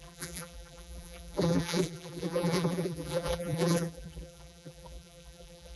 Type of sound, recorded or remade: remade